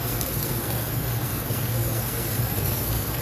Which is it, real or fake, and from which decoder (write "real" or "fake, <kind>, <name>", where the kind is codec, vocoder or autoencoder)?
fake, codec, SNAC